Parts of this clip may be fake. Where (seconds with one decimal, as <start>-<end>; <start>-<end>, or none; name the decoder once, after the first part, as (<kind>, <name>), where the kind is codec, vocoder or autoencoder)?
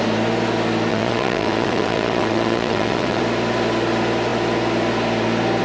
0.9-3.2 (vocoder, WaveNeXt)